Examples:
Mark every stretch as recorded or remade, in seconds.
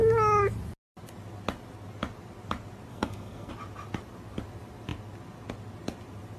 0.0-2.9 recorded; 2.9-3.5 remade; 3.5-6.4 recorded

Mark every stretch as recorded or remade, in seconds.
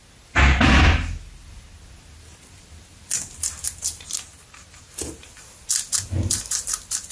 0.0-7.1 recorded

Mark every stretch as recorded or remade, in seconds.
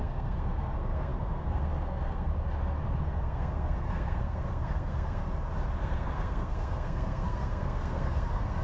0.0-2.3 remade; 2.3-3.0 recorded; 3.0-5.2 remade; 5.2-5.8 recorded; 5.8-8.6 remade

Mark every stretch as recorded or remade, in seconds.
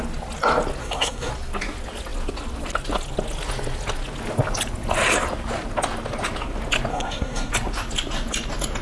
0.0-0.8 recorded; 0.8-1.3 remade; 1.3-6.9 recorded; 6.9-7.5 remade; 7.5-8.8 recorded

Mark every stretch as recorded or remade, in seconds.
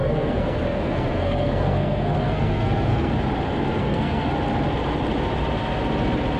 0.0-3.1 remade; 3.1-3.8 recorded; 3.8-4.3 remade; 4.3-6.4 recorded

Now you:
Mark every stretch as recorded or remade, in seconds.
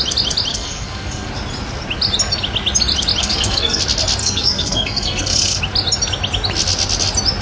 0.0-0.5 recorded; 0.5-1.3 remade; 1.3-3.2 recorded; 3.2-3.8 remade; 3.8-4.2 recorded; 4.2-5.6 remade; 5.6-7.4 recorded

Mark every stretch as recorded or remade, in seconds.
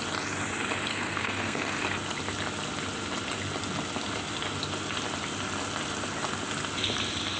0.0-0.9 recorded; 0.9-1.8 remade; 1.8-7.4 recorded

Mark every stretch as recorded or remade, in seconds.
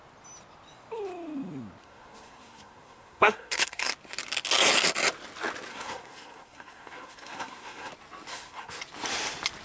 0.0-1.8 recorded; 1.8-3.9 remade; 3.9-5.7 recorded; 5.7-7.9 remade; 7.9-8.3 recorded; 8.3-8.8 remade; 8.8-9.6 recorded